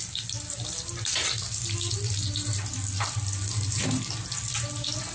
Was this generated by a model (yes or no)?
no